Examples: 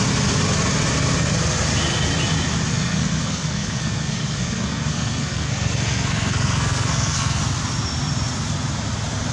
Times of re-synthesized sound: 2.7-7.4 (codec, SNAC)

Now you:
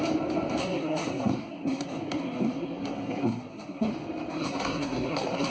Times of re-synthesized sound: 0.6-3.9 (codec, SNAC); 4.3-5.5